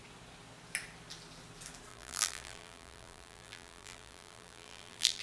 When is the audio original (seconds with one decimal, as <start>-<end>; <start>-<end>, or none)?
0.0-1.9